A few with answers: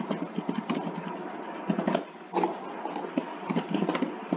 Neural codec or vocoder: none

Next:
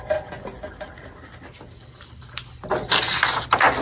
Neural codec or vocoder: none